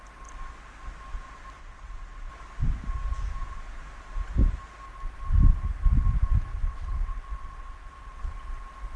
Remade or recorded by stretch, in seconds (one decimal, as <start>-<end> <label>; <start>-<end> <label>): 0.0-1.6 recorded; 1.6-2.3 remade; 2.3-6.5 recorded; 6.5-8.2 remade; 8.2-9.0 recorded